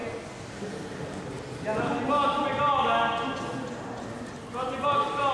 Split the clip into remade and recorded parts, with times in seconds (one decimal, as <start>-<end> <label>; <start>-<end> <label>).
0.0-5.3 recorded